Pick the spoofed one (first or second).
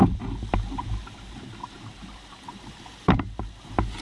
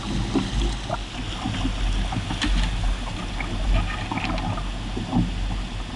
first